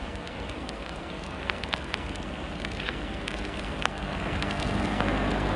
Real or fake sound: fake